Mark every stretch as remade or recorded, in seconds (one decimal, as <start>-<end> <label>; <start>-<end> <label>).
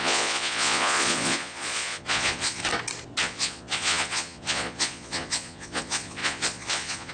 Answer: 0.0-2.6 remade; 2.6-3.2 recorded; 3.2-7.1 remade